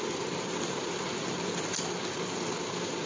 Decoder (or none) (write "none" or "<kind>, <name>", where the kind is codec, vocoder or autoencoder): none